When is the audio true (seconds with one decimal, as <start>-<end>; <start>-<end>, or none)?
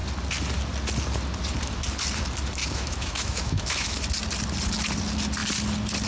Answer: 0.0-2.6; 4.0-6.1